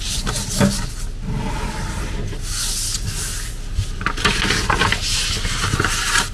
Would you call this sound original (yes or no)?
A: yes